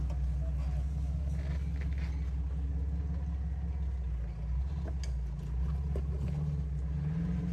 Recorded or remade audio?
recorded